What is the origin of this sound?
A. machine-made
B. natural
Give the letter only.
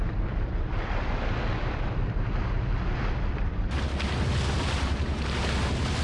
B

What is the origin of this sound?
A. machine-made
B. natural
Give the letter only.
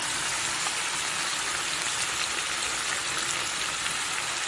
B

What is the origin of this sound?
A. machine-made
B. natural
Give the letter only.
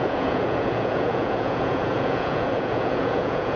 A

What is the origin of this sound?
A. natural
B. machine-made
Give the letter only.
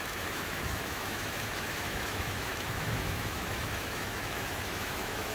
B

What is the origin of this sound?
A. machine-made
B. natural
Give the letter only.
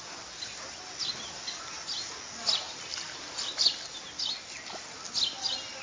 B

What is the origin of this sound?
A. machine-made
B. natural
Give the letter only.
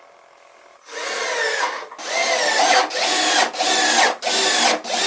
B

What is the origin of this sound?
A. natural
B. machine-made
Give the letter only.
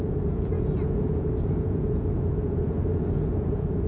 B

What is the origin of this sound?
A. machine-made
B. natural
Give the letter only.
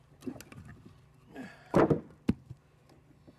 B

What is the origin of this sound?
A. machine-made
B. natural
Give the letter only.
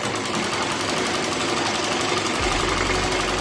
B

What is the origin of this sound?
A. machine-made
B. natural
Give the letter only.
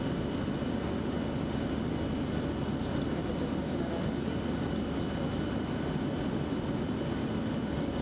B